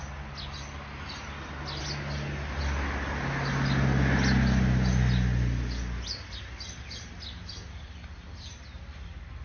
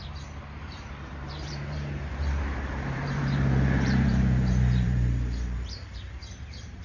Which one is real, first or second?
first